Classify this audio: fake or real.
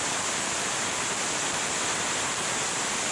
real